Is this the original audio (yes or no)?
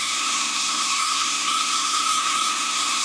no